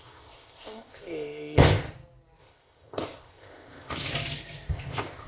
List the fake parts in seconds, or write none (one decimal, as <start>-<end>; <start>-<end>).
0.0-1.8; 2.4-4.1; 4.7-5.3